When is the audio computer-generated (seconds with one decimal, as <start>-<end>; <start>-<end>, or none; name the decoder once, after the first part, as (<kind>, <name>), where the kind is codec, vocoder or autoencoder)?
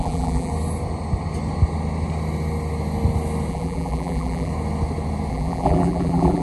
0.0-0.5 (vocoder, BigVGAN v2); 3.5-4.5; 5.3-6.4